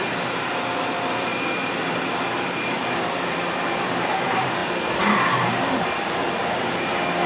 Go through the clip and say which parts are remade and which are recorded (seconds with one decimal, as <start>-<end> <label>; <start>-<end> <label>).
0.0-7.3 remade